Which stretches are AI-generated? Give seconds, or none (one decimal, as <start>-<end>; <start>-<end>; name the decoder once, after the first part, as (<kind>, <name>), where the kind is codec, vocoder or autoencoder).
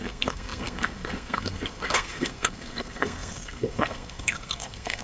0.0-5.0 (codec, SNAC)